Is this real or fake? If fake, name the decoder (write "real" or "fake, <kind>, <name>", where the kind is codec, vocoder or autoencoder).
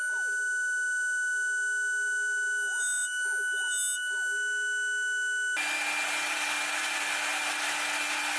real